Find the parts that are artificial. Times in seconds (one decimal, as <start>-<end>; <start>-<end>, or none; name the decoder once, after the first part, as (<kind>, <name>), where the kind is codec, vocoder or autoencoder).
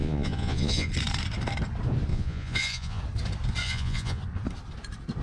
0.0-0.9 (vocoder, Vocos); 2.1-3.0; 3.6-4.2